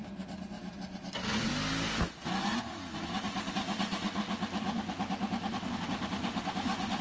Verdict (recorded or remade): recorded